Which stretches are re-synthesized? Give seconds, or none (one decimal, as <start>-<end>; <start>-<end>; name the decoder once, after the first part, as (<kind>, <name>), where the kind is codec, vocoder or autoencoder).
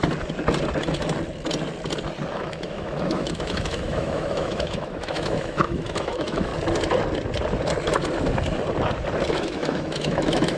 2.3-6.5 (autoencoder, DAC-VAE); 9.3-10.6